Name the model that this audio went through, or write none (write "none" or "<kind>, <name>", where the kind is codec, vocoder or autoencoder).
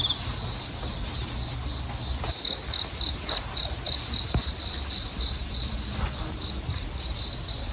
none